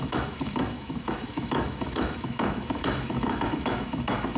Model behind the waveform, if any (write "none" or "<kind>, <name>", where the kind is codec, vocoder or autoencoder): autoencoder, DAC-VAE